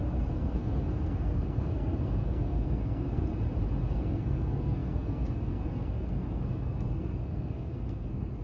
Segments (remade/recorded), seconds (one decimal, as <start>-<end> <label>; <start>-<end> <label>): 0.0-3.3 remade; 3.3-3.9 recorded; 3.9-8.4 remade